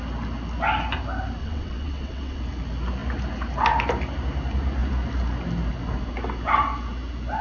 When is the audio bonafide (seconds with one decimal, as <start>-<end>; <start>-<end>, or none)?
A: 0.0-1.4; 2.4-7.4